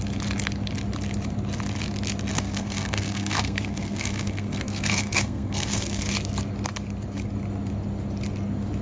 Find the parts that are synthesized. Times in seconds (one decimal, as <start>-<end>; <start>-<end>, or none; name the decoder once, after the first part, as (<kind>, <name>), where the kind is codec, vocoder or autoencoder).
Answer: 2.3-6.1 (codec, SNAC)